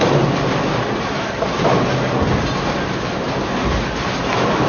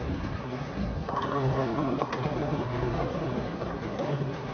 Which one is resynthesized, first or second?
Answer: second